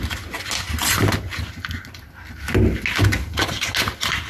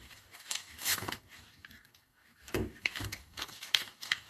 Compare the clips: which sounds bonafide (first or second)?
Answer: first